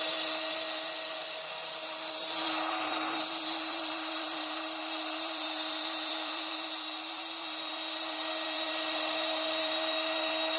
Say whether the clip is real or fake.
fake